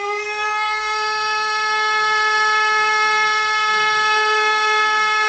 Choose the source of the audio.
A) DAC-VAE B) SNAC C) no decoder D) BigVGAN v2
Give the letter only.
B